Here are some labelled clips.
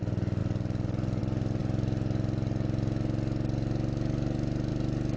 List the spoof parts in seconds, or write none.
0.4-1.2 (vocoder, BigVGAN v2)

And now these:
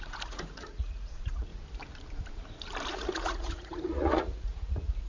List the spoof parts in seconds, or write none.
0.0-1.5 (vocoder, Vocos); 2.9-5.1

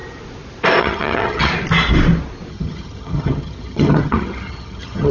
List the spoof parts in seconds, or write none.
0.8-1.5 (vocoder, HiFi-GAN); 2.5-5.1

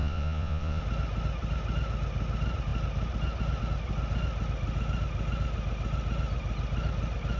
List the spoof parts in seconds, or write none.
0.0-0.8 (vocoder, Vocos)

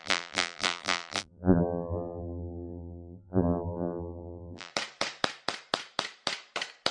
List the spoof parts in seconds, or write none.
0.0-4.7 (vocoder, BigVGAN v2)

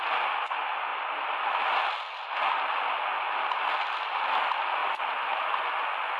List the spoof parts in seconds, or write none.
none

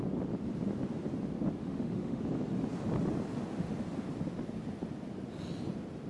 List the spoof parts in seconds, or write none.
1.6-2.2 (autoencoder, DAC-VAE)

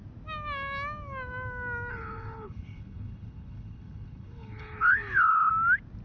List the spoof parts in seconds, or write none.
1.9-5.5 (codec, HILCodec)